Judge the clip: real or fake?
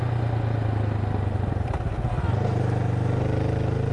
real